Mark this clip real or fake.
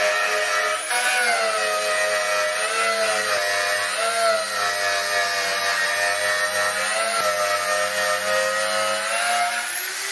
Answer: real